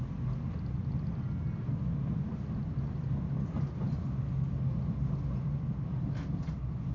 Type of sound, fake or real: real